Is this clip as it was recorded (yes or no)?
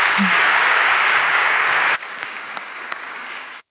no